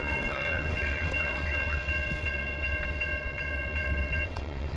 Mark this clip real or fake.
fake